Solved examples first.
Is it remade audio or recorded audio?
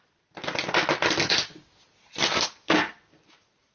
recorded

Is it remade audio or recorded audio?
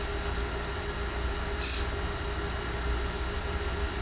recorded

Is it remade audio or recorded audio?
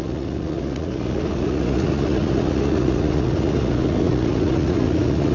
remade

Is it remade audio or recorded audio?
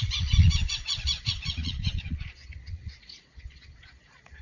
remade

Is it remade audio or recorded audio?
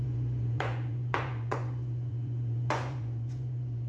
remade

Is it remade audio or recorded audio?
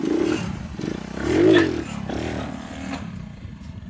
recorded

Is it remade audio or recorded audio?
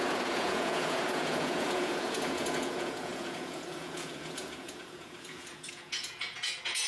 remade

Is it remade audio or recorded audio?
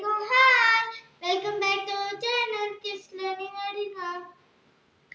recorded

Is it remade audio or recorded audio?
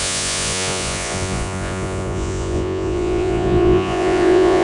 remade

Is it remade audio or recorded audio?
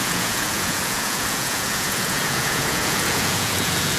remade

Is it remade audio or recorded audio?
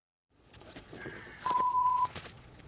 remade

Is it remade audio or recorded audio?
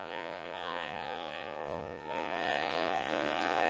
remade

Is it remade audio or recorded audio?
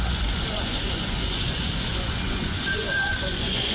remade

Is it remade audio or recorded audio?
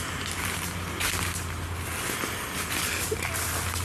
recorded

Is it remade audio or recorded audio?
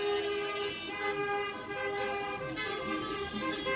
recorded